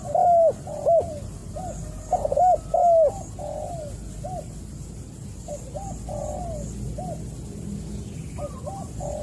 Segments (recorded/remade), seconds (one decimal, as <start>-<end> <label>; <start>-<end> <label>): 0.0-9.2 recorded